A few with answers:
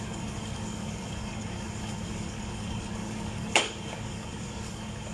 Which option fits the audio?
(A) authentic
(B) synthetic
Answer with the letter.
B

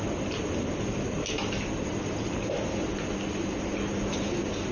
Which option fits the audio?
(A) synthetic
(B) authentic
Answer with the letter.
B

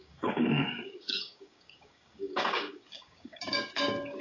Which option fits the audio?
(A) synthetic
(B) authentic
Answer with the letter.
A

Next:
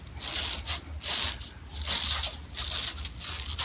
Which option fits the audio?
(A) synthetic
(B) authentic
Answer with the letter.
B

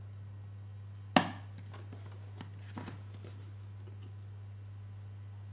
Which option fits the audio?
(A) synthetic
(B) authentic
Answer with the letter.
B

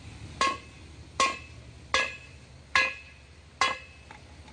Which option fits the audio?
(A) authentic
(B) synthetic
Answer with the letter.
A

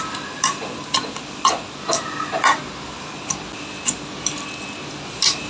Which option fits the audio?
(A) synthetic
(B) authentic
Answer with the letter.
B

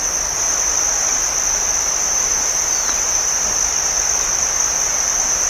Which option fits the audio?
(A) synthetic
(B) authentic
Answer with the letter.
B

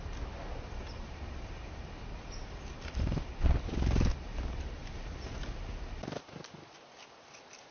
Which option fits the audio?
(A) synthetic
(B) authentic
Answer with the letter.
B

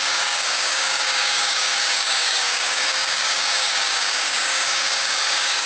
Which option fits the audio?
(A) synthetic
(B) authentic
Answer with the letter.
A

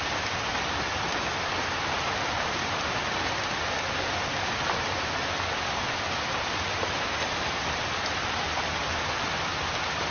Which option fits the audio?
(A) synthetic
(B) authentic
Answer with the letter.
B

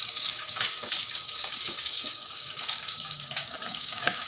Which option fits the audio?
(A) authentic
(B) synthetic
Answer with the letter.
B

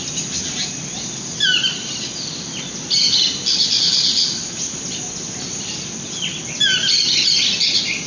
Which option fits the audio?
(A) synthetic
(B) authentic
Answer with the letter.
B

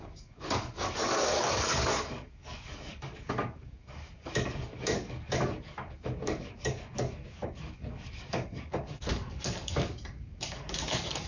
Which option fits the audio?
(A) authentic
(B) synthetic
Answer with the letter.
B